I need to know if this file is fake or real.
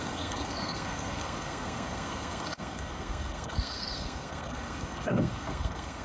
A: fake